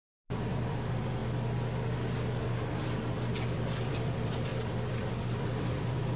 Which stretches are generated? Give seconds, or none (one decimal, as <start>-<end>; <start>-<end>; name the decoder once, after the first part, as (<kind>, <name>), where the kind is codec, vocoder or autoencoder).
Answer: 0.0-1.2 (vocoder, BigVGAN v2); 2.4-6.2